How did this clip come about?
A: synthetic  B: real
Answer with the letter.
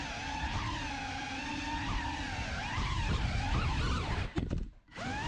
A